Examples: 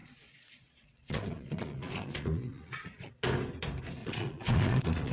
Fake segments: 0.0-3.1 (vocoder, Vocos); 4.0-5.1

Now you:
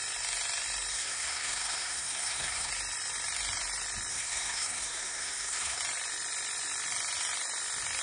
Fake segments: 0.9-2.7 (codec, SNAC); 4.1-5.8

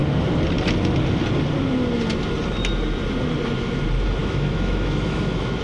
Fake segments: 4.2-5.6 (autoencoder, DAC-VAE)

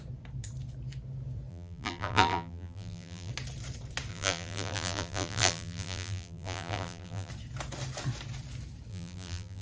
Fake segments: 1.5-3.3 (vocoder, BigVGAN v2); 4.1-7.3; 8.9-9.6

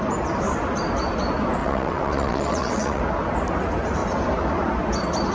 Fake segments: 1.6-3.0 (vocoder, WaveNeXt)